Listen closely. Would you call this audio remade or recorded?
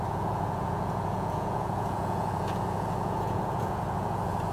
remade